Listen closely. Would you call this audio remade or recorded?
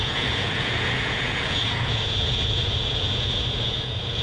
remade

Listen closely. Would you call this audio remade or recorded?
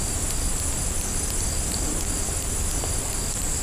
recorded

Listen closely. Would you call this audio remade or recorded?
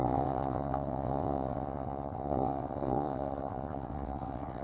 remade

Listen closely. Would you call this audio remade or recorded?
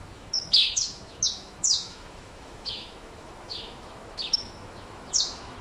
remade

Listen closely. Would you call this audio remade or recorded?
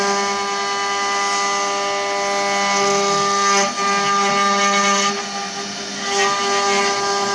recorded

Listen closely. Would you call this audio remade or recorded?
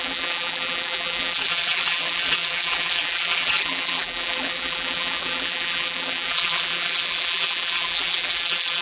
remade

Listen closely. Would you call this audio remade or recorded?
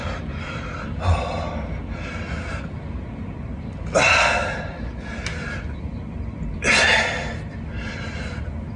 recorded